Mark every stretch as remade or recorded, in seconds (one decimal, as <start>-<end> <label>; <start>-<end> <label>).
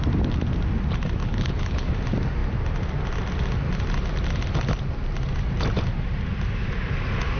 0.0-1.2 recorded; 1.2-1.9 remade; 1.9-7.4 recorded